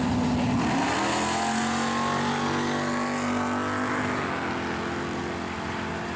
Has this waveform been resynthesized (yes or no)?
no